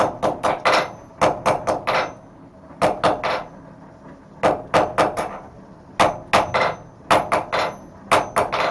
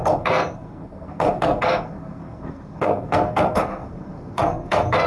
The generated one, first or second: second